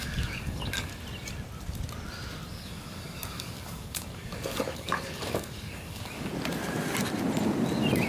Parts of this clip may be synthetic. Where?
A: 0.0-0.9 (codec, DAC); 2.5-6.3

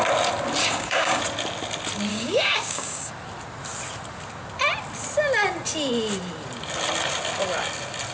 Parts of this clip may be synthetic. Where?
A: 0.6-1.2 (codec, DAC); 2.1-3.1